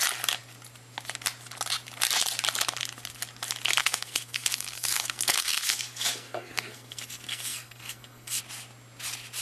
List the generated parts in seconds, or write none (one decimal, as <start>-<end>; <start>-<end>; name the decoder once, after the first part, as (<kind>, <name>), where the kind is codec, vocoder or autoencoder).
3.8-8.4 (codec, SNAC)